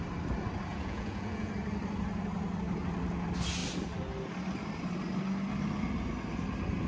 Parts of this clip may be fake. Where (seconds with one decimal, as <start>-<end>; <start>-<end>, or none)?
0.7-1.5